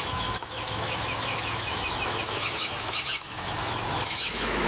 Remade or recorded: remade